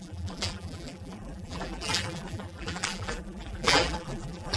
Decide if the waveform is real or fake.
fake